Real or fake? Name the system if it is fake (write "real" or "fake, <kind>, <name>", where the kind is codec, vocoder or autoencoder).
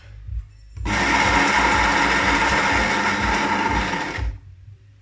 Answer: real